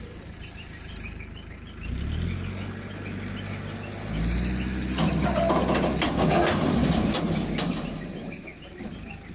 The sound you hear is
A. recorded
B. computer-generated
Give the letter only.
A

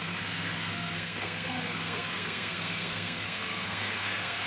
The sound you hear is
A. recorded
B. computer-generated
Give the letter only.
B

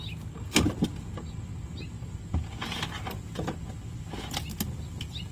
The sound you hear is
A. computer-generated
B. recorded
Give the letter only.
B